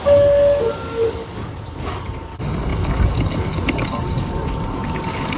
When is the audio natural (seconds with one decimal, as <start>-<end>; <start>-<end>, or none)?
none